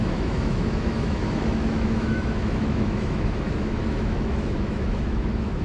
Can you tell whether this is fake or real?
fake